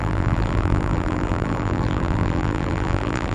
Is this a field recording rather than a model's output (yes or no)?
no